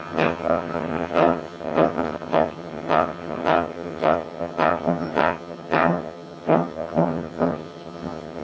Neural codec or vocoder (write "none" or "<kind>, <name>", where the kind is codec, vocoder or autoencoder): vocoder, HiFi-GAN